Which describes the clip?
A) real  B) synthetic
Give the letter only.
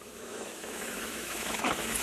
B